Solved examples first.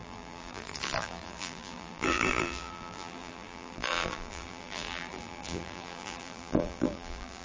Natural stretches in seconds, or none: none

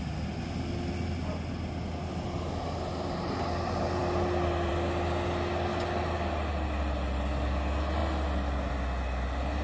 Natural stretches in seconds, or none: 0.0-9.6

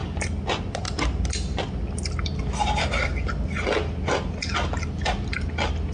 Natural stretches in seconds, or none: 0.0-5.9

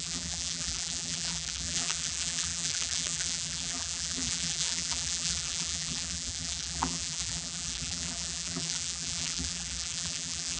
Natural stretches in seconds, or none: none

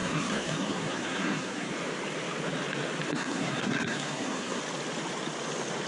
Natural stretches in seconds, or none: 1.7-3.1; 4.6-5.9

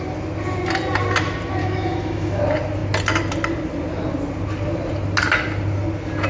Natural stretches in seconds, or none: 0.0-1.6; 2.4-6.3